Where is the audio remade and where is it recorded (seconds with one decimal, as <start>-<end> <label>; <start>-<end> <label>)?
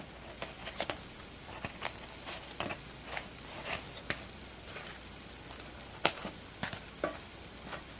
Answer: 0.0-8.0 recorded